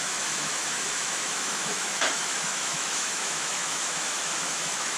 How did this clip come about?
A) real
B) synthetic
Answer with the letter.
B